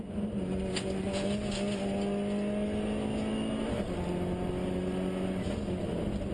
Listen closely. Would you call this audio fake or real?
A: real